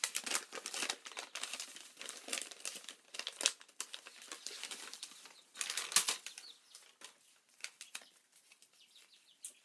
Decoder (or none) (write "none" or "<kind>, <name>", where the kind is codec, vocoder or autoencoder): none